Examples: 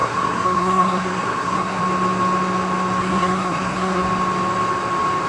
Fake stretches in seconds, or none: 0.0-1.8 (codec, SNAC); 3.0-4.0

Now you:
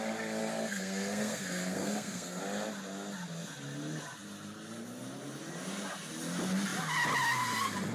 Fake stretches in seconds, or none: 0.4-2.4 (codec, SNAC)